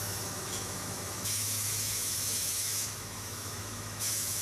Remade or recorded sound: remade